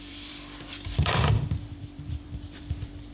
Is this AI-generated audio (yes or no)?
yes